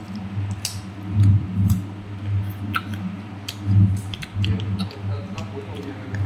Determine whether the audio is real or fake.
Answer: real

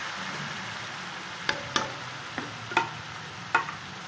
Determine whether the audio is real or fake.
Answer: real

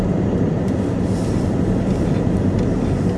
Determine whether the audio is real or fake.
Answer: real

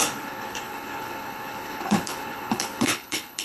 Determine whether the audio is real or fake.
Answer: fake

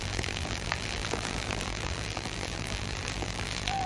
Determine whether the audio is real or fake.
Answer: fake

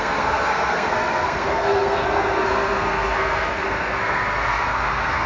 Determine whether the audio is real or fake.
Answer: fake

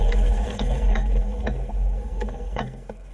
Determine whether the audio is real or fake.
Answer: fake